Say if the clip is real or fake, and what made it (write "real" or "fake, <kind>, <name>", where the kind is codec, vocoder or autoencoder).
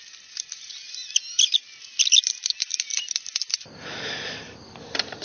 real